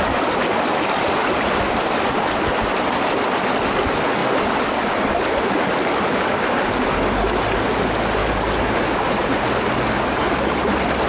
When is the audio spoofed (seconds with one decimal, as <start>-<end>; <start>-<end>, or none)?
none